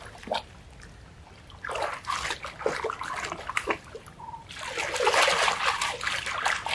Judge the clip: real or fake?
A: real